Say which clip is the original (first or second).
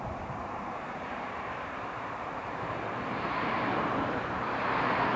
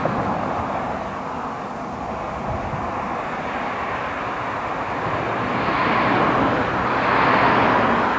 second